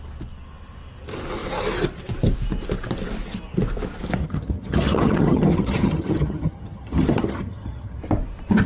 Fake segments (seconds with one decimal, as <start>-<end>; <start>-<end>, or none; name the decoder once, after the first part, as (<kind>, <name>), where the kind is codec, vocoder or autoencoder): 4.2-8.0 (vocoder, HiFi-GAN)